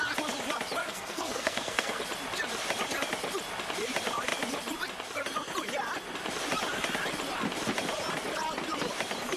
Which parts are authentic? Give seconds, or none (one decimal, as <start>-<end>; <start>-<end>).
0.0-0.8; 2.0-9.4